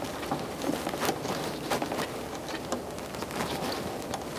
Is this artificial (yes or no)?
no